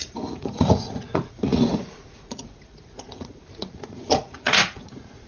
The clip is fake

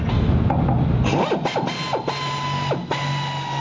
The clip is real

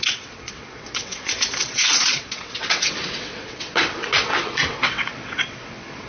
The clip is fake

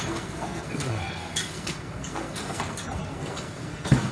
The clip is fake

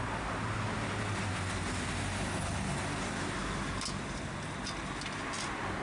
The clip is real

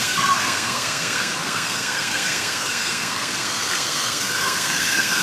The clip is fake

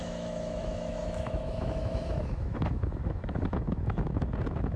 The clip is fake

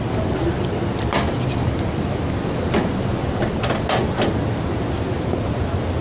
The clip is real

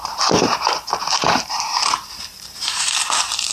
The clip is fake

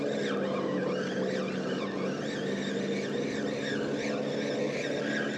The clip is real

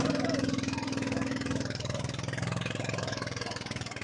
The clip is fake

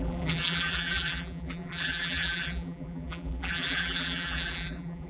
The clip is fake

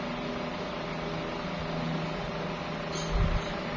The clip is real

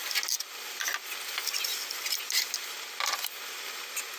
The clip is real